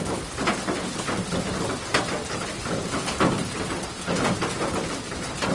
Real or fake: real